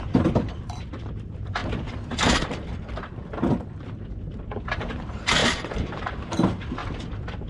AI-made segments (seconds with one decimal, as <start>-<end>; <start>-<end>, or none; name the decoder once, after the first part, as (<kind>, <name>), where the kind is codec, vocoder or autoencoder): 0.0-1.6 (vocoder, BigVGAN v2); 4.7-6.8